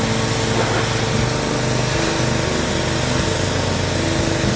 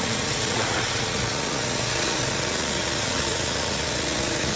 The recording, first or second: first